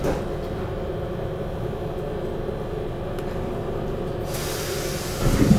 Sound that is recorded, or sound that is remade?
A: recorded